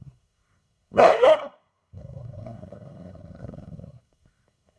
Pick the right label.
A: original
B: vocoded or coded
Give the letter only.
B